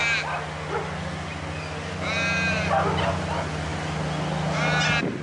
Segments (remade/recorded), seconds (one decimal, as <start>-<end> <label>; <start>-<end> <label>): 0.0-5.2 recorded